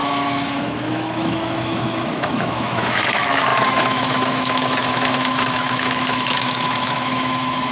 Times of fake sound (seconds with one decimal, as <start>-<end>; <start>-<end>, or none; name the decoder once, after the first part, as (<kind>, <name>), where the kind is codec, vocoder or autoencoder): 0.0-7.7 (autoencoder, DAC-VAE)